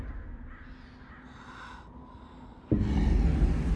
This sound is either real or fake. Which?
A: real